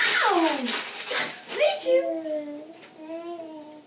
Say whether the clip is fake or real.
real